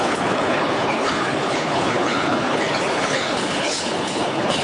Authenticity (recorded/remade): remade